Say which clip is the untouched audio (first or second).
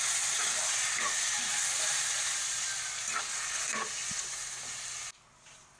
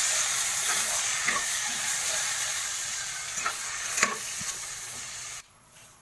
first